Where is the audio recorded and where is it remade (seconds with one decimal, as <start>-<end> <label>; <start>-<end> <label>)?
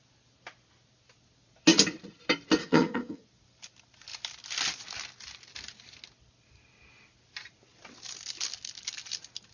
0.0-2.6 recorded; 2.6-3.2 remade; 3.2-9.5 recorded